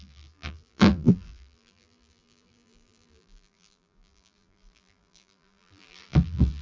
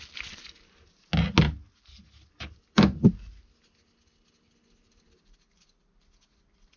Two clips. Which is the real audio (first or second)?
second